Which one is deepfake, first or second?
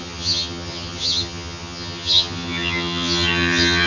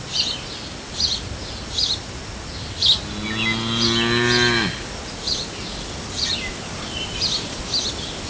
first